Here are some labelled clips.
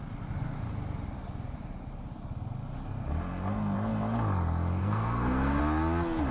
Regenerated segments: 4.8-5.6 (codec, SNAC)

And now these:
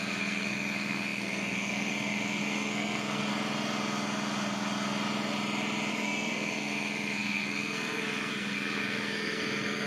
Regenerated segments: 0.0-3.3 (codec, SNAC); 5.9-9.9

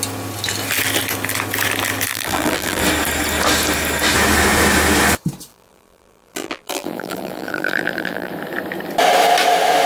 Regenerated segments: 2.1-2.8 (vocoder, BigVGAN v2); 5.5-8.3

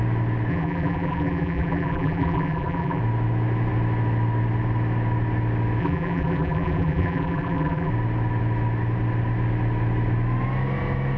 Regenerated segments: 0.5-3.0 (vocoder, BigVGAN v2); 5.8-7.9

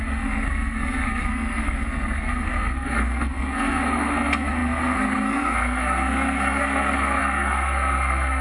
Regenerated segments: 0.0-8.4 (codec, SNAC)

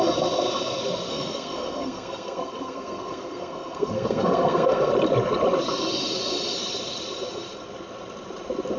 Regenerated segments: 1.1-4.9 (codec, SNAC)